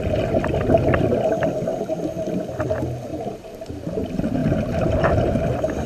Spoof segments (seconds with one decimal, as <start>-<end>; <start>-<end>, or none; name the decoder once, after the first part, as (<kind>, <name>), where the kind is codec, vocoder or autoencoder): 1.7-2.3 (vocoder, BigVGAN v2); 3.1-4.0; 4.4-5.5